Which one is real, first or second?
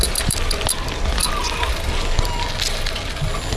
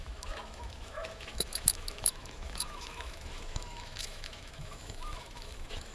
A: first